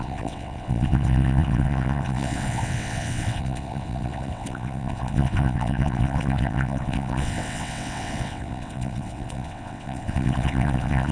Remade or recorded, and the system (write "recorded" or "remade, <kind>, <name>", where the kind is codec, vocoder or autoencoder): remade, vocoder, WaveNeXt